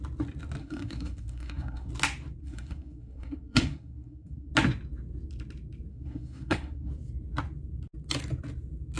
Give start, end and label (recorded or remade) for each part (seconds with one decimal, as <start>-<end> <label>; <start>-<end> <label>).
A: 0.0-0.6 recorded; 0.6-1.9 remade; 1.9-2.4 recorded; 2.4-4.5 remade; 4.5-5.9 recorded; 5.9-6.9 remade; 6.9-9.0 recorded